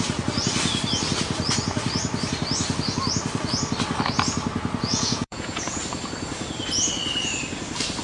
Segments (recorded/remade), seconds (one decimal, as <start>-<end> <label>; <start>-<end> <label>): 0.0-4.9 recorded; 4.9-5.8 remade; 5.8-8.0 recorded